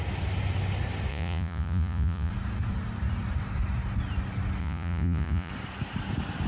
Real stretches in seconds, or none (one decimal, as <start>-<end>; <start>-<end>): 0.0-1.1; 2.3-4.6; 5.5-6.5